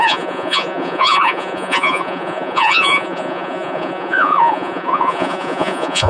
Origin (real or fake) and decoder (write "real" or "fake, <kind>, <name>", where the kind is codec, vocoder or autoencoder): fake, vocoder, Vocos